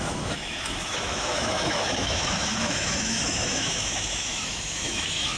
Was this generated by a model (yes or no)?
yes